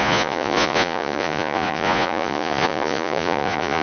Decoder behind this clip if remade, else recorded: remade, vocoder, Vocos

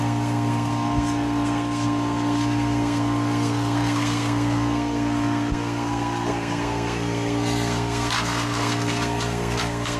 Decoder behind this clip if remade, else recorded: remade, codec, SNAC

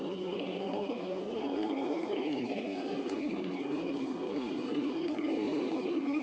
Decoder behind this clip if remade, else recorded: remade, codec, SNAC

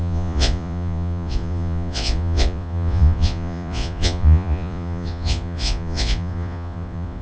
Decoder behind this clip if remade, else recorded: remade, vocoder, Vocos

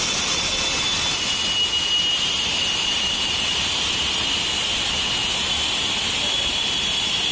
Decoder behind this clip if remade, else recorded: recorded